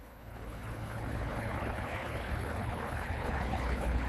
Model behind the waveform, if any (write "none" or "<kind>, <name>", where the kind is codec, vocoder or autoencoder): codec, HILCodec